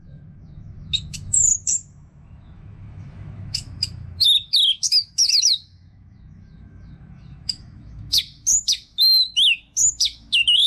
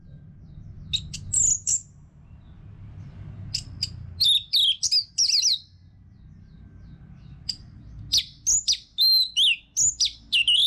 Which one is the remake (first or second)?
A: first